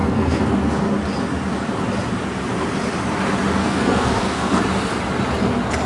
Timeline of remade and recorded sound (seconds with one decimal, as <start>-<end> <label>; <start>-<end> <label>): 0.0-0.8 remade; 0.8-3.6 recorded; 3.6-4.6 remade; 4.6-5.9 recorded